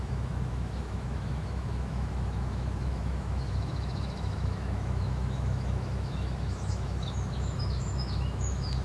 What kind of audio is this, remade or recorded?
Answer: remade